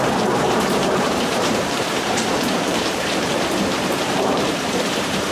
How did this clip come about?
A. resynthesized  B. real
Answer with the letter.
A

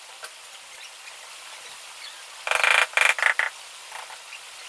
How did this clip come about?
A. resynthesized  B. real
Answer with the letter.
B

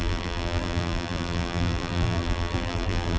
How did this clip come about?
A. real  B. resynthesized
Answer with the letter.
B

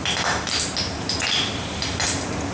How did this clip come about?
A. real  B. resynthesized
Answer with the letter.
A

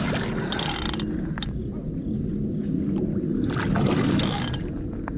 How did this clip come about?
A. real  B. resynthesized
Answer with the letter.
A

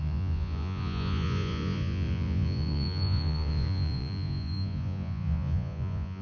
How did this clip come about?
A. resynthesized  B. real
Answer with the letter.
A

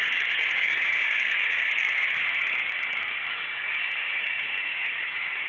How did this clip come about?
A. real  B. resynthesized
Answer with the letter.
B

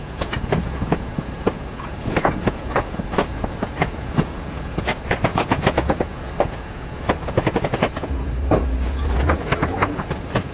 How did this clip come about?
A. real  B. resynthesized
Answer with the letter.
B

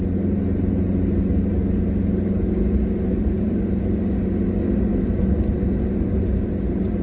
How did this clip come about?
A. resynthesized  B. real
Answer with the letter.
B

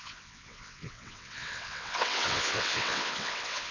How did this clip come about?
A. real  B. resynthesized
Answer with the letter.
B